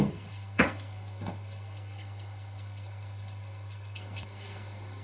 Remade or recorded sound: remade